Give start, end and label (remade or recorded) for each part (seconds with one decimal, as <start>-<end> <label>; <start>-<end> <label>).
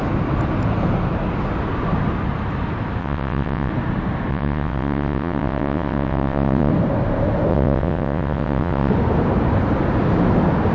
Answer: 0.0-3.0 recorded; 3.0-3.7 remade; 3.7-4.3 recorded; 4.3-6.7 remade; 6.7-7.5 recorded; 7.5-8.9 remade; 8.9-10.7 recorded